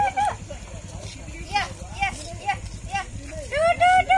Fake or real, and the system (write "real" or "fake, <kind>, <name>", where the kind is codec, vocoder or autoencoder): real